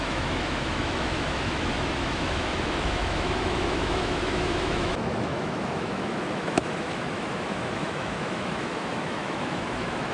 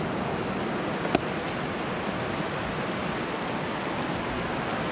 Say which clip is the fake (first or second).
first